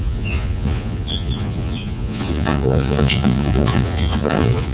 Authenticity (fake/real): fake